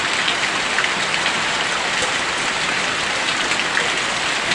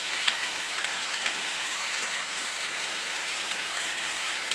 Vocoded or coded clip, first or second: second